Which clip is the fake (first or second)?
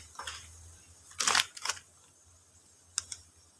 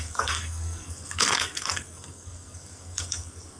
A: second